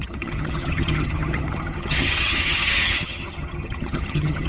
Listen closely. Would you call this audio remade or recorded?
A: remade